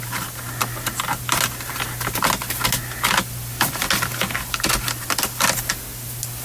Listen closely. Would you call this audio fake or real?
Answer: real